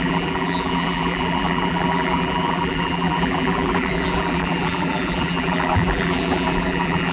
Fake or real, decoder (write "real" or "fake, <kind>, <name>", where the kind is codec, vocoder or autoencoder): fake, vocoder, BigVGAN v2